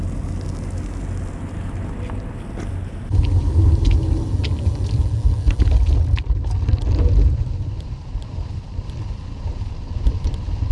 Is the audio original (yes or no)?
yes